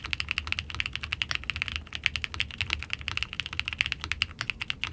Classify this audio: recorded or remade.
recorded